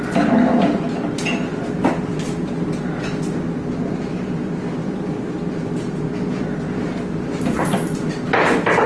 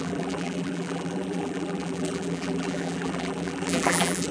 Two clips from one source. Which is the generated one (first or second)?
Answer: second